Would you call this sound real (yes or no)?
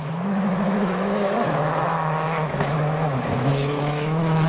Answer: no